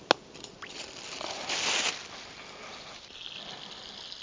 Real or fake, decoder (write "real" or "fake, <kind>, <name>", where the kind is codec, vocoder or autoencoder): real